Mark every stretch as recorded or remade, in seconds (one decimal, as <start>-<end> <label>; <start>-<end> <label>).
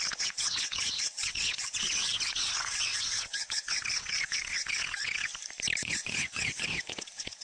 0.0-5.3 remade; 5.3-5.8 recorded; 5.8-7.4 remade